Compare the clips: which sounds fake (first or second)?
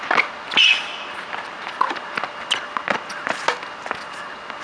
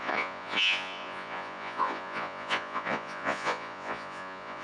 second